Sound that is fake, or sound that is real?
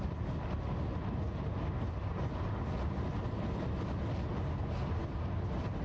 real